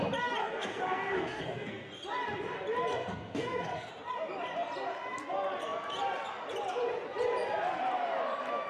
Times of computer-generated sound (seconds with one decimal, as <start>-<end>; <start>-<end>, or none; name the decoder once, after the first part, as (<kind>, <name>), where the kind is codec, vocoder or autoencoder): 0.4-1.9 (codec, SNAC); 2.9-3.9